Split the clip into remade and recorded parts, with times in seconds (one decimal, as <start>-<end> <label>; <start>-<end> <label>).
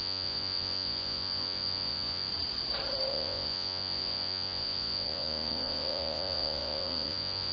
0.0-2.3 remade; 2.3-3.1 recorded; 3.1-7.5 remade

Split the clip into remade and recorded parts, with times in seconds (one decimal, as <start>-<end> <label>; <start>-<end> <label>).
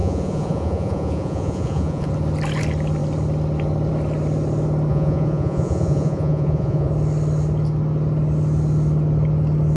0.0-2.1 remade; 2.1-4.9 recorded; 4.9-6.9 remade; 6.9-9.8 recorded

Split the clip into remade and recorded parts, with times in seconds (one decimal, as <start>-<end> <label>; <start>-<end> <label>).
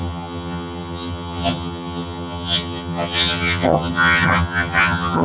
0.0-5.2 remade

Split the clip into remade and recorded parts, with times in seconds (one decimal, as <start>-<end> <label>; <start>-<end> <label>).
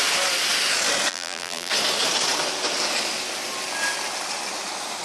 0.0-1.1 recorded; 1.1-1.7 remade; 1.7-5.0 recorded